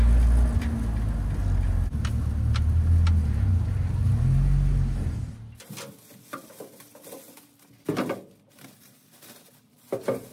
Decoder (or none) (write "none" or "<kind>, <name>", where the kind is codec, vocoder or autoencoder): none